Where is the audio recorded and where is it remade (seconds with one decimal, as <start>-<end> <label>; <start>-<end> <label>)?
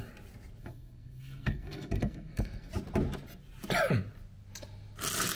0.0-0.6 recorded; 0.6-2.7 remade; 2.7-5.4 recorded